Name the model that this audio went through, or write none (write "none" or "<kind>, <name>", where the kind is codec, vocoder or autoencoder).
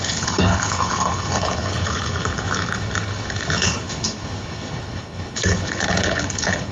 codec, HILCodec